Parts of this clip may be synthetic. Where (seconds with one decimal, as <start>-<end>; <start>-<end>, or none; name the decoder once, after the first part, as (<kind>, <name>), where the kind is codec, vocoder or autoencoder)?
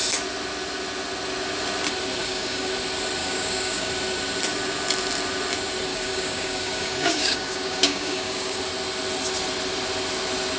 2.2-2.7 (codec, DAC); 3.2-3.9; 5.9-8.6